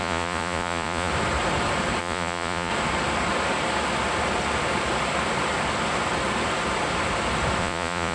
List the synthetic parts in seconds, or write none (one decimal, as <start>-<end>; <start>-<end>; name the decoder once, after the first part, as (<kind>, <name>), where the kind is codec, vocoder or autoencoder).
0.0-1.1 (vocoder, Vocos); 2.0-2.7; 7.6-8.1